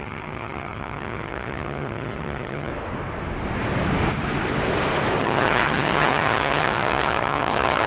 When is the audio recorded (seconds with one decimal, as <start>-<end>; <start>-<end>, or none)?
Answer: 2.7-5.2